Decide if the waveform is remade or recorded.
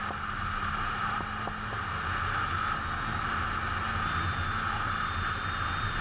recorded